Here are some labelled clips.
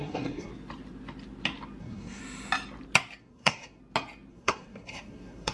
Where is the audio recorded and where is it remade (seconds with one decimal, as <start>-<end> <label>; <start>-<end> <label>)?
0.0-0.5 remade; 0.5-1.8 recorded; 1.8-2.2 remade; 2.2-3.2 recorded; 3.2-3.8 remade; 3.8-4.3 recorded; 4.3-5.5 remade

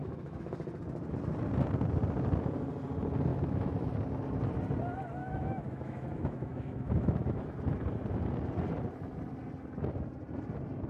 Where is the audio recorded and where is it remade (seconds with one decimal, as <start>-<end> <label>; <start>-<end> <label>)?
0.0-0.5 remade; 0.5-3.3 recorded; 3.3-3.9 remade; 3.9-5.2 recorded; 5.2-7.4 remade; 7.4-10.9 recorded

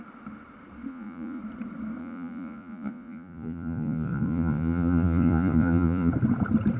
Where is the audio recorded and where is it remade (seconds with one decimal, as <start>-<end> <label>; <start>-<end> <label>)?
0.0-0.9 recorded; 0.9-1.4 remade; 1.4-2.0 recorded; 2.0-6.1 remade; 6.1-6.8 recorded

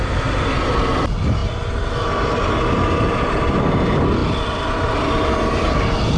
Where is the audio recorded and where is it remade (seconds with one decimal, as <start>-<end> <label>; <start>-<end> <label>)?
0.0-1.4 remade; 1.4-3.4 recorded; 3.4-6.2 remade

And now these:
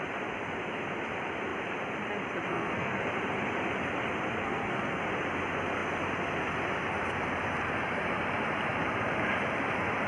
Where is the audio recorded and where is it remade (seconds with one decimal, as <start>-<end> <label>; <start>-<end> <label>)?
0.0-2.5 recorded; 2.5-3.0 remade; 3.0-4.4 recorded; 4.4-5.0 remade; 5.0-10.1 recorded